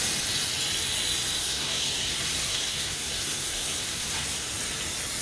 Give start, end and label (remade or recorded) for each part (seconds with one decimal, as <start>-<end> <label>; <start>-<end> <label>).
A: 0.0-1.4 recorded; 1.4-4.5 remade; 4.5-5.2 recorded